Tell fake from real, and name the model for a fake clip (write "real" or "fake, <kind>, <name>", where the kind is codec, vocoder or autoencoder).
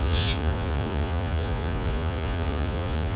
fake, vocoder, Vocos